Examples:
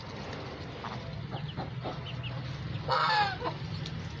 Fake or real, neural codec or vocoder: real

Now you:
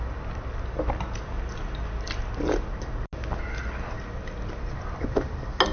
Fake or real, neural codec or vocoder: real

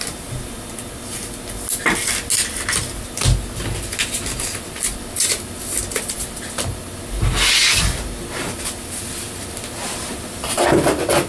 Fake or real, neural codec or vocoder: real